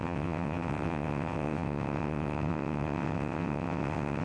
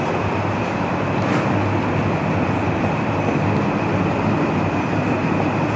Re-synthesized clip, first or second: first